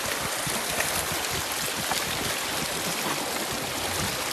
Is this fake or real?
real